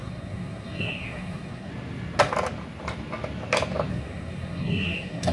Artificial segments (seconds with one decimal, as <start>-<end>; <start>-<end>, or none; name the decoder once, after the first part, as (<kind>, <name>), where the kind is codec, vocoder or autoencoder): 0.0-1.7 (codec, SNAC); 3.9-5.3